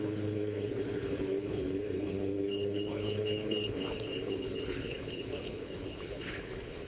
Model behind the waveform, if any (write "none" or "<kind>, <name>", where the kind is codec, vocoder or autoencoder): codec, HILCodec